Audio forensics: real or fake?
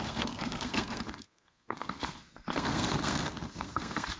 fake